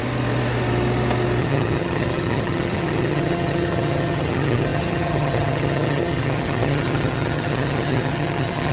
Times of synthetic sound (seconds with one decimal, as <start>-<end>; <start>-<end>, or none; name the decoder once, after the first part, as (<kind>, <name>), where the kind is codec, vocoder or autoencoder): 1.4-8.7 (vocoder, HiFi-GAN)